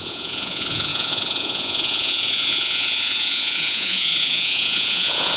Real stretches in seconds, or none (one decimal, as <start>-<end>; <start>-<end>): none